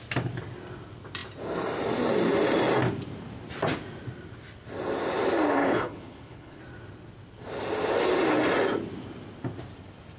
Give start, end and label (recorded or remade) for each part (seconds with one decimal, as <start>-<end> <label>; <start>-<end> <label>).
0.0-5.6 recorded; 5.6-6.6 remade; 6.6-10.2 recorded